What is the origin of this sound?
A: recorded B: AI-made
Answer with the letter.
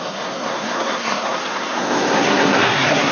B